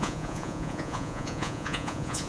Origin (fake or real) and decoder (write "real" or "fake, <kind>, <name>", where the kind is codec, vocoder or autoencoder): fake, vocoder, Vocos